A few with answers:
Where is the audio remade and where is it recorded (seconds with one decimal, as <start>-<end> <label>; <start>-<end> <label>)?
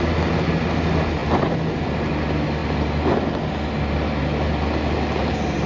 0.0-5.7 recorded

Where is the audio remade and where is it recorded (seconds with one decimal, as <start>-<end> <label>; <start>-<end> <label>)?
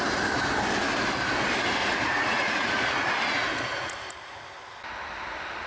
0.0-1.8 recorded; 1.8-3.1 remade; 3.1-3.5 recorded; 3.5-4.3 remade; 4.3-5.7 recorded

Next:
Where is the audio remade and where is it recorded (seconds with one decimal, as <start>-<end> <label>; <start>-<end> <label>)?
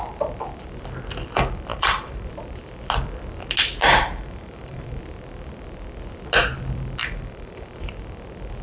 0.0-1.7 recorded; 1.7-2.3 remade; 2.3-3.8 recorded; 3.8-5.0 remade; 5.0-7.0 recorded; 7.0-7.9 remade; 7.9-8.6 recorded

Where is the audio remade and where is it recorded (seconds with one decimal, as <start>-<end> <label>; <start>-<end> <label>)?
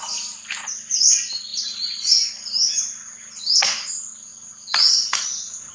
0.0-5.7 recorded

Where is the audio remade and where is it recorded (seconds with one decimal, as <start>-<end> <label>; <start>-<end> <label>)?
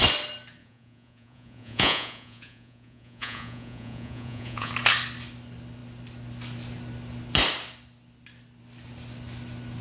0.0-0.6 recorded; 0.6-4.7 remade; 4.7-9.8 recorded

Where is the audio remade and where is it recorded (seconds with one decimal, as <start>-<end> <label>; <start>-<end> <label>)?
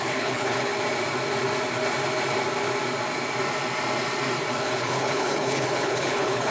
0.0-0.7 remade; 0.7-4.6 recorded; 4.6-6.5 remade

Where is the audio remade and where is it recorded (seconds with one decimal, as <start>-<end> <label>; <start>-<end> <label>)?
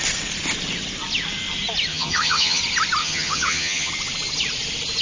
0.0-1.9 recorded; 1.9-2.6 remade; 2.6-3.0 recorded; 3.0-3.9 remade; 3.9-5.0 recorded